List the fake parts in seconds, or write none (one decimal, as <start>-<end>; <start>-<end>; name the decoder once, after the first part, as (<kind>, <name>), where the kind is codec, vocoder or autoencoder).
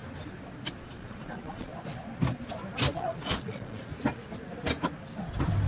0.8-1.7 (vocoder, Vocos); 2.9-3.9